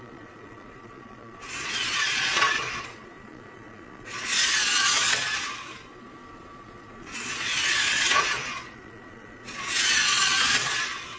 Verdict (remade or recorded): remade